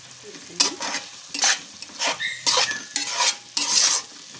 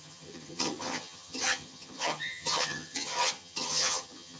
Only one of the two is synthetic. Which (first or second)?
second